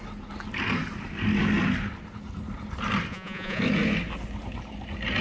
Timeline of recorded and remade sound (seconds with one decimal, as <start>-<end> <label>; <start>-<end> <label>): 0.0-3.1 recorded; 3.1-3.6 remade; 3.6-5.2 recorded